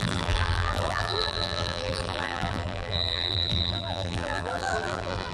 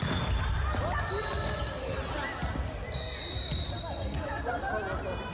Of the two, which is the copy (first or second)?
first